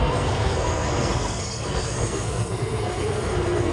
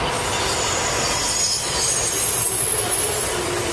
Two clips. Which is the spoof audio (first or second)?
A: first